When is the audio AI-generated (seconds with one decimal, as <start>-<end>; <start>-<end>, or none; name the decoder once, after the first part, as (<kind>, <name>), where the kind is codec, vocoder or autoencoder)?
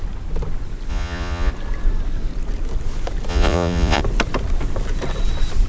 0.9-1.5 (vocoder, Vocos); 3.3-4.0